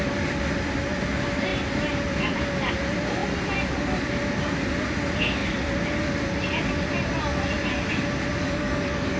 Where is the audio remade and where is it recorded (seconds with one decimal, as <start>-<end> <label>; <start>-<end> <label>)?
0.0-8.4 recorded; 8.4-9.2 remade